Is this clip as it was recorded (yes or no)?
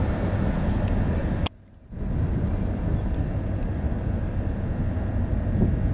yes